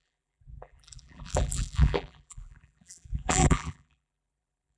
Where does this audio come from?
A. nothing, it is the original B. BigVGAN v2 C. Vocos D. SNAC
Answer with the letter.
B